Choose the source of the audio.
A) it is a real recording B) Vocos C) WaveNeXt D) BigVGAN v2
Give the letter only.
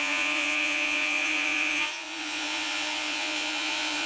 B